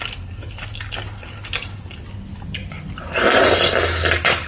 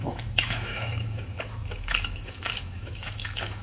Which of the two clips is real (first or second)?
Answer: first